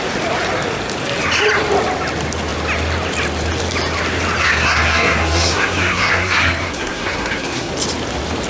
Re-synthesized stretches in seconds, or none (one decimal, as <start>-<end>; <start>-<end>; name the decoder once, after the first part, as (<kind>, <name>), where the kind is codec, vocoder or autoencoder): 4.4-7.7 (codec, SNAC)